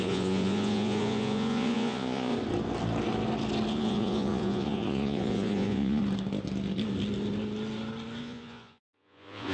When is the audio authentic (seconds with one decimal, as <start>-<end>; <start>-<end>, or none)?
2.3-3.7; 6.0-8.2